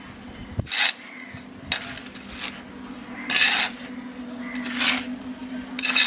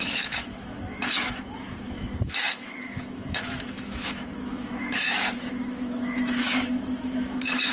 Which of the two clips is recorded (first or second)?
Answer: first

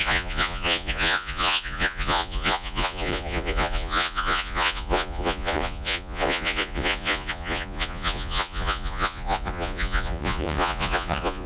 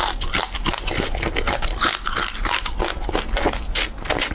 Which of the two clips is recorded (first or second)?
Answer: second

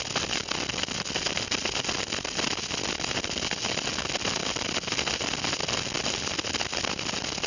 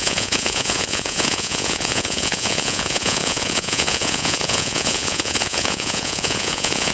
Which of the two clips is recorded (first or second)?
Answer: first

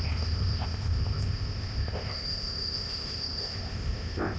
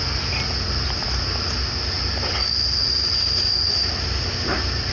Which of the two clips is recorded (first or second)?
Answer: second